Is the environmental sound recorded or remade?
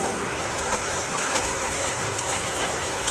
remade